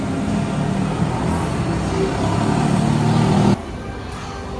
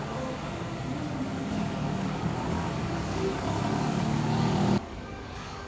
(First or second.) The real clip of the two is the first